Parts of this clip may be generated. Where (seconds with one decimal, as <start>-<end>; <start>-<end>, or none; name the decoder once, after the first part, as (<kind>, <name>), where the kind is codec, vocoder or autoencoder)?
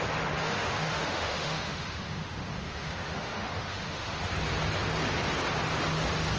0.4-4.2 (autoencoder, DAC-VAE)